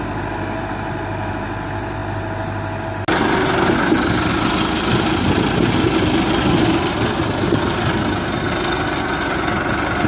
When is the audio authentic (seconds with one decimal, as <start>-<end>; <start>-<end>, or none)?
0.0-10.1